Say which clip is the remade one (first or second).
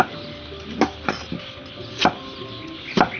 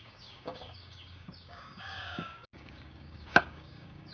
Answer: second